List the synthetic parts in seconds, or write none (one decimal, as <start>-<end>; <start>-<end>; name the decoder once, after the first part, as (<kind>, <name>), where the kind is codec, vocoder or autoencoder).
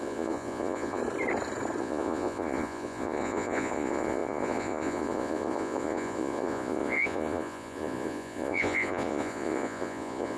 0.0-1.0 (vocoder, Vocos); 1.8-10.4